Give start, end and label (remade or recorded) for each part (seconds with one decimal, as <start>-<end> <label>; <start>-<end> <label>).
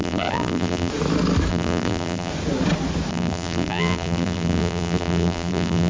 0.0-0.9 remade; 0.9-1.5 recorded; 1.5-2.3 remade; 2.3-3.1 recorded; 3.1-5.9 remade